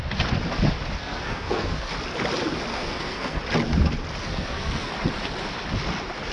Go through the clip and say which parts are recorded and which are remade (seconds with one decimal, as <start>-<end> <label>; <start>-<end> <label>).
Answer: 0.0-1.0 recorded; 1.0-1.9 remade; 1.9-2.7 recorded; 2.7-3.4 remade; 3.4-4.2 recorded; 4.2-4.9 remade; 4.9-6.3 recorded